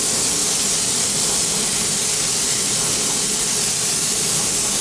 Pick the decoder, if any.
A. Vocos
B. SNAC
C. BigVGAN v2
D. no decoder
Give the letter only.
D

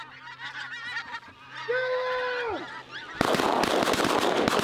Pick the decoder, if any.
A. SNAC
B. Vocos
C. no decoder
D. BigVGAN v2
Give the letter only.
C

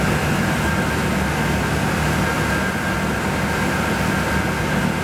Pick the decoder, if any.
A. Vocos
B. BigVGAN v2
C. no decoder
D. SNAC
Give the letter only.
C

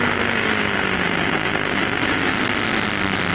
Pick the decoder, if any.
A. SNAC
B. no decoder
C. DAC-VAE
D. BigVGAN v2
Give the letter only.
B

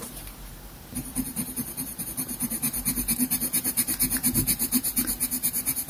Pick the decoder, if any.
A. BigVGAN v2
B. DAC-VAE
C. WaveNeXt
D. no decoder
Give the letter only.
A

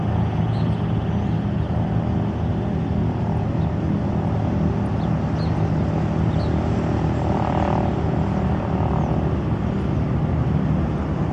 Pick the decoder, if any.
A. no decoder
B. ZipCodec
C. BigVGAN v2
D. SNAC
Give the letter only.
A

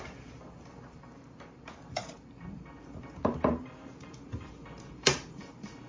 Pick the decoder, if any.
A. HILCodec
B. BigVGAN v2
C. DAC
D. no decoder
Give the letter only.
B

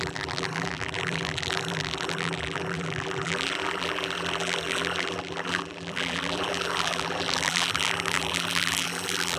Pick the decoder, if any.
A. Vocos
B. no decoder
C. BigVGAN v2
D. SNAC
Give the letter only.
C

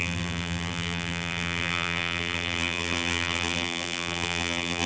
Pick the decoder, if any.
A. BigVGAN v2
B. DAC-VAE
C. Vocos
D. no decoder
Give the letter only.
A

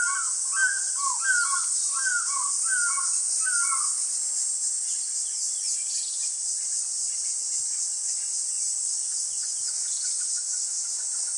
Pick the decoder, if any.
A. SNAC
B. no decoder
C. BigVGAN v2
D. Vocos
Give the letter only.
B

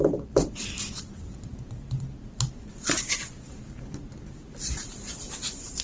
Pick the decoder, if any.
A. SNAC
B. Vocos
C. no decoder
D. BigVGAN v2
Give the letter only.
D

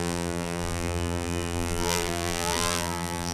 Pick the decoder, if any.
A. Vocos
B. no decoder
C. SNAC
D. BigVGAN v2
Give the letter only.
D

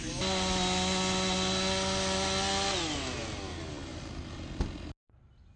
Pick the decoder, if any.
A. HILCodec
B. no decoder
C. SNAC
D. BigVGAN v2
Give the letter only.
B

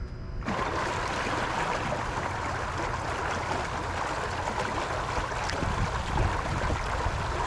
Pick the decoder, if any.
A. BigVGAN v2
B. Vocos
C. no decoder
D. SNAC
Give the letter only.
C